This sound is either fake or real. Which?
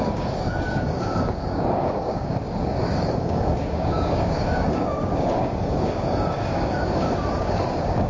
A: fake